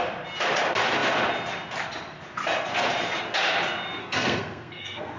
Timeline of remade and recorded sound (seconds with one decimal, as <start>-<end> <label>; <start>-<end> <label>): 0.0-4.0 recorded; 4.0-5.2 remade